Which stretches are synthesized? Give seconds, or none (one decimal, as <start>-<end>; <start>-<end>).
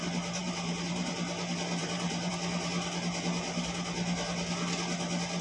0.4-1.1; 1.8-2.3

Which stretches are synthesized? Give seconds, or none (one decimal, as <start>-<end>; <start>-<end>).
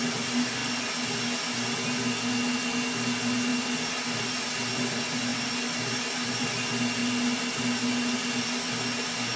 none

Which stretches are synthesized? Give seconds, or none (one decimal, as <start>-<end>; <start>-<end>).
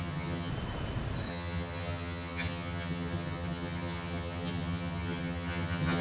0.0-0.5; 1.3-6.0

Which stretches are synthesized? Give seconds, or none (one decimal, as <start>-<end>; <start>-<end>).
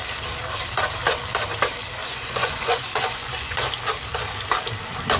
2.0-3.7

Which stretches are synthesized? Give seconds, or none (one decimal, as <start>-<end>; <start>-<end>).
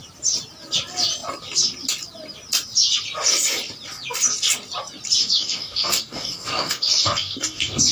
5.2-7.9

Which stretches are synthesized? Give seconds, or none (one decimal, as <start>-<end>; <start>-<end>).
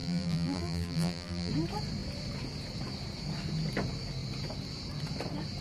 0.0-1.5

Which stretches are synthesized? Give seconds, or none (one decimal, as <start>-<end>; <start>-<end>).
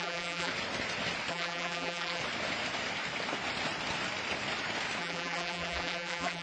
0.0-0.5; 1.3-2.2; 5.0-6.4